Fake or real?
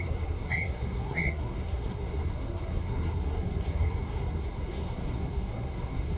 fake